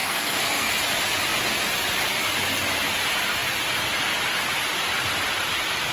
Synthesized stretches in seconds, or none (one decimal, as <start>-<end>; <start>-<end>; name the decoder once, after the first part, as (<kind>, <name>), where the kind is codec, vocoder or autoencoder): 0.0-0.7 (codec, SNAC)